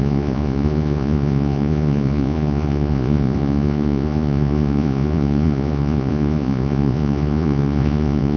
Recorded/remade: remade